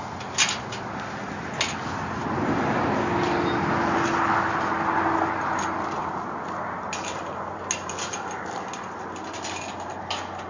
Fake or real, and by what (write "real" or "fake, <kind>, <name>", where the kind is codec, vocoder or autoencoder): real